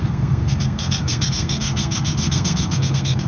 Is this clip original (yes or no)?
no